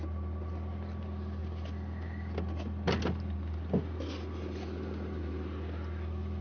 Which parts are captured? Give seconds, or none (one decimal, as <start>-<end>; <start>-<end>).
0.0-6.4